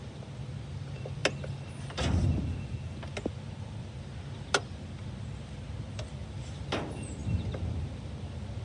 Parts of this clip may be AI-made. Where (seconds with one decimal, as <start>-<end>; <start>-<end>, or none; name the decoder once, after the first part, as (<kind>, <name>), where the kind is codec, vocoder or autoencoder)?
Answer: none